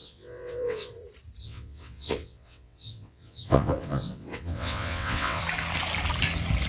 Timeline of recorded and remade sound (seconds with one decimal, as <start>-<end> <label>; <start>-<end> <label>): 0.0-0.9 remade; 0.9-1.4 recorded; 1.4-5.4 remade; 5.4-6.7 recorded